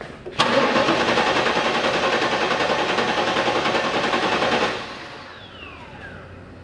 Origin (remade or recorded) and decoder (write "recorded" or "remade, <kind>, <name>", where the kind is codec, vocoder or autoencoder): recorded